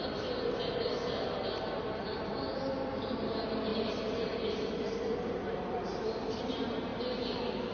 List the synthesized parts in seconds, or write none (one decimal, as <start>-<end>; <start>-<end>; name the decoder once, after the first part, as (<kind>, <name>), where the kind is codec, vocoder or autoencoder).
none